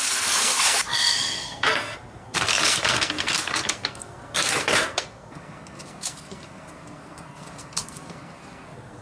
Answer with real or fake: fake